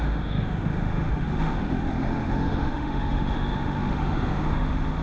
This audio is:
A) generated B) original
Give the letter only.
A